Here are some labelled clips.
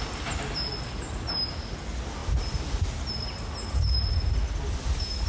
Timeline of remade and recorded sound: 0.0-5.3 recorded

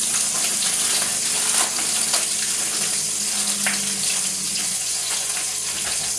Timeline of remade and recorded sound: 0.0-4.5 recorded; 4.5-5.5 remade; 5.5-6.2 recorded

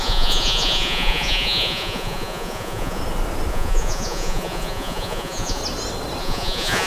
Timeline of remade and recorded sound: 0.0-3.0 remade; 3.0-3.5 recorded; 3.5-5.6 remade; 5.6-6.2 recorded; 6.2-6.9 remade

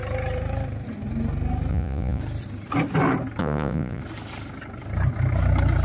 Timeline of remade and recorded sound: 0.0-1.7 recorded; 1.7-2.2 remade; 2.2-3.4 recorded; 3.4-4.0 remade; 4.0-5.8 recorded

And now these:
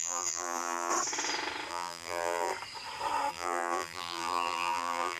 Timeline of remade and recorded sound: 0.0-0.9 remade; 0.9-1.7 recorded; 1.7-2.5 remade; 2.5-3.3 recorded; 3.3-5.2 remade